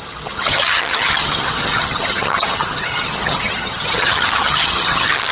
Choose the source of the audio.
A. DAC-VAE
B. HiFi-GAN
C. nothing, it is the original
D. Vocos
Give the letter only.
B